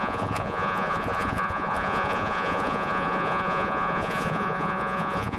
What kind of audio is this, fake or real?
fake